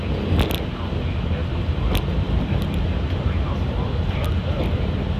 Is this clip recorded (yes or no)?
yes